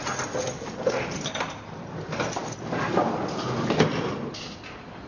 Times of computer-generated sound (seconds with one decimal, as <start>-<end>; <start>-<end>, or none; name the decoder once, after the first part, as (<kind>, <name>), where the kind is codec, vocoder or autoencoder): none

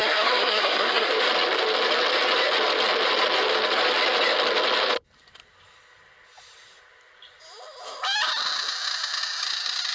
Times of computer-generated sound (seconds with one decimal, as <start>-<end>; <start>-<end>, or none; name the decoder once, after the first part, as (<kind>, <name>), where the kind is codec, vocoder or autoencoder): 0.0-1.1 (codec, SNAC)

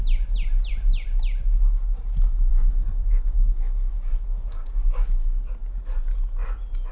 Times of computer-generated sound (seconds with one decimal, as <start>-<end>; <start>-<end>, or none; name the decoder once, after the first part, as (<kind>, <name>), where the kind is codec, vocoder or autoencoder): 2.5-3.9 (codec, DAC)

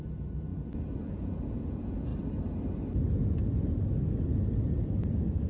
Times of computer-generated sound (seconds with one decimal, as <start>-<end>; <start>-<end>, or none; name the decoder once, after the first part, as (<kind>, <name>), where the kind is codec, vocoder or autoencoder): 0.0-2.1 (vocoder, Vocos)

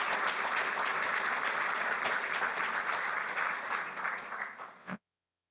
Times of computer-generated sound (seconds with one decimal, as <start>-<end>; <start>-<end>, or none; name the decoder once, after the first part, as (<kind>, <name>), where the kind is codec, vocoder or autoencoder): 4.8-5.5 (vocoder, WaveNeXt)